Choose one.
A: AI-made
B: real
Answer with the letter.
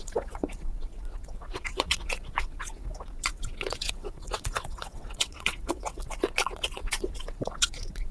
A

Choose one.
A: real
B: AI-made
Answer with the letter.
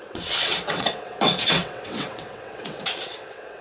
B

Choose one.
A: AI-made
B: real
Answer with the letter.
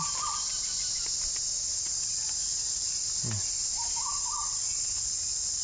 B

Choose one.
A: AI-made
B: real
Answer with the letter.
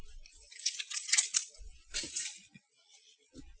A